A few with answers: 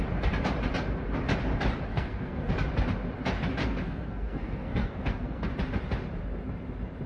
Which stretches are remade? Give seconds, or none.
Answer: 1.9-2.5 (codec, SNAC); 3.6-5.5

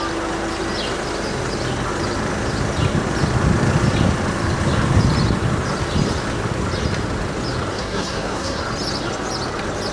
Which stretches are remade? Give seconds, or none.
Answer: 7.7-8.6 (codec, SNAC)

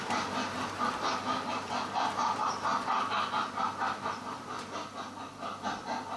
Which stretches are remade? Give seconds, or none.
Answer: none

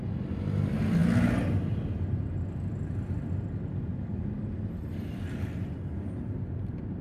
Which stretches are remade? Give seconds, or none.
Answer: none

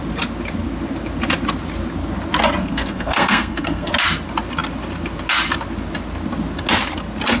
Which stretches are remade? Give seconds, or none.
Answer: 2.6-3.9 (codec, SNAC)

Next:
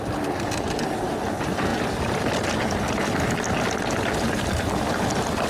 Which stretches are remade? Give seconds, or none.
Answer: none

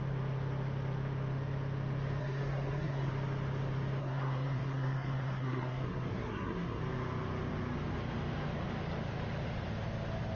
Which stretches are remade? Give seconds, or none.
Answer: 2.2-3.1 (codec, SNAC); 4.0-6.8